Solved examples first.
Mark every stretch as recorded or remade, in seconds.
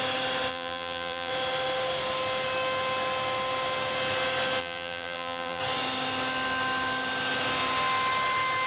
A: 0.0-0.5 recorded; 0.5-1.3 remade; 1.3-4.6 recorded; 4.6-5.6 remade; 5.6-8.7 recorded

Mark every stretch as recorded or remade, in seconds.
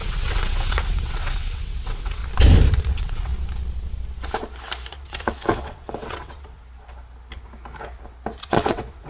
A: 0.0-2.2 remade; 2.2-2.8 recorded; 2.8-3.3 remade; 3.3-4.9 recorded; 4.9-6.6 remade; 6.6-8.4 recorded; 8.4-9.1 remade